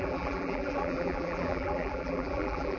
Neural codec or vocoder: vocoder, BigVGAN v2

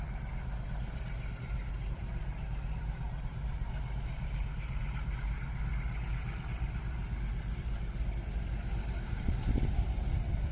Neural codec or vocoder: none